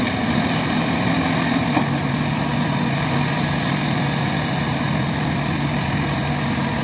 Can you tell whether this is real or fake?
fake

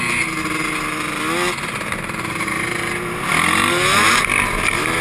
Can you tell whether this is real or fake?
real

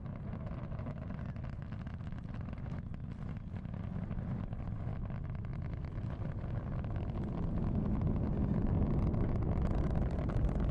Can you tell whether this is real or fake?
real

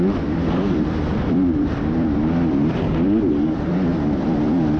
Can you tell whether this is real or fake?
fake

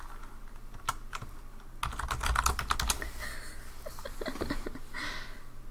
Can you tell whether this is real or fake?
real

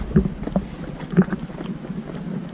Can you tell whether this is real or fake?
real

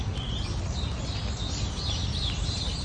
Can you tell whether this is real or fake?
fake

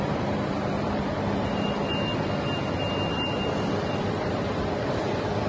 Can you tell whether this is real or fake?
fake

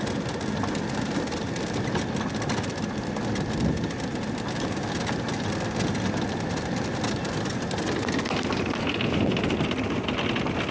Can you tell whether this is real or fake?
real